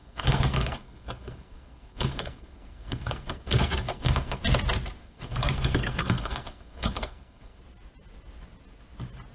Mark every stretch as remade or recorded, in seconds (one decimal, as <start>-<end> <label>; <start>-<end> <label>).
0.0-4.4 remade; 4.4-5.0 recorded; 5.0-7.6 remade; 7.6-9.3 recorded